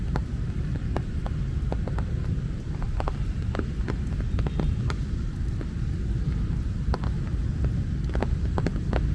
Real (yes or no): yes